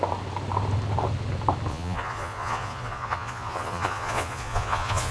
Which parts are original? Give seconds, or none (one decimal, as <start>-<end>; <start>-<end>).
0.0-1.7